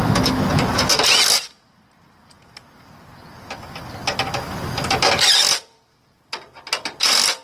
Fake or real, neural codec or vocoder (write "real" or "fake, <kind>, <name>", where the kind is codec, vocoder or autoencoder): real